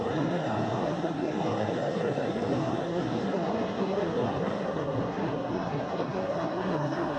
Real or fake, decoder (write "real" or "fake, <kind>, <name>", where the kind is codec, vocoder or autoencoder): fake, codec, SNAC